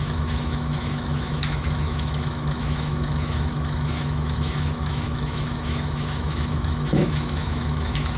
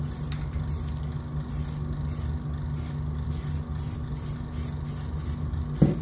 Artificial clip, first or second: first